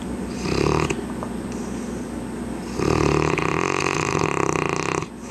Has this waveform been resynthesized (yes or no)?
no